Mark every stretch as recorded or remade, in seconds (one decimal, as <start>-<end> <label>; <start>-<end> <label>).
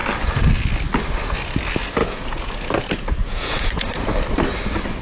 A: 0.0-2.0 recorded; 2.0-2.5 remade; 2.5-3.2 recorded; 3.2-3.9 remade; 3.9-5.0 recorded